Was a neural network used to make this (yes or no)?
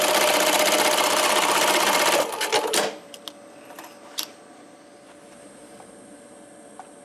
no